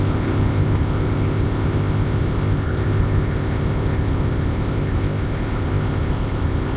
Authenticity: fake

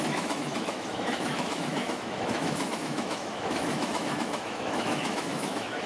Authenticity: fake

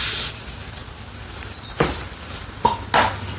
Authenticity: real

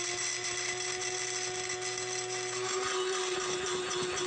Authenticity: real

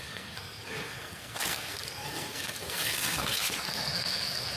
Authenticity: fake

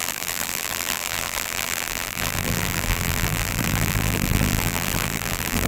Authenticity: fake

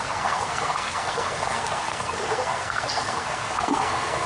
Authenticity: fake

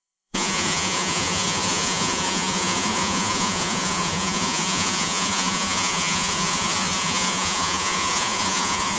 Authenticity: fake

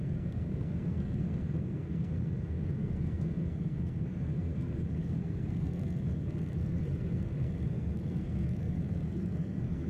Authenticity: fake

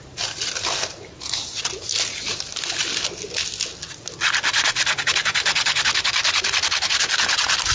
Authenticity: real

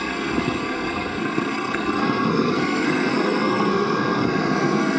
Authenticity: fake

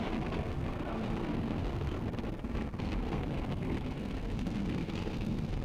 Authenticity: fake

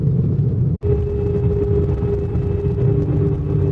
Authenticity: real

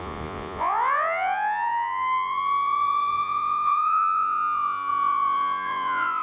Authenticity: fake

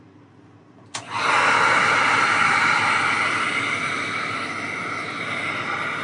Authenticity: real